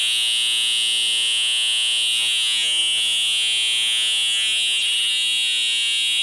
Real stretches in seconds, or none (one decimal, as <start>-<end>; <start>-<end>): 0.0-6.2